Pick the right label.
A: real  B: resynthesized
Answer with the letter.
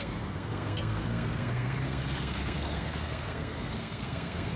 B